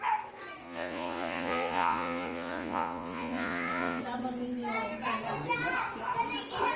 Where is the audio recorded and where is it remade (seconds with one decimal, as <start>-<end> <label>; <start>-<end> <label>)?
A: 0.0-0.6 recorded; 0.6-4.0 remade; 4.0-6.8 recorded